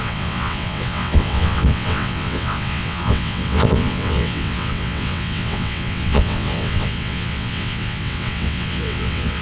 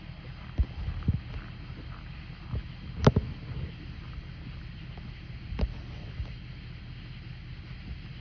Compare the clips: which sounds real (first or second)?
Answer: second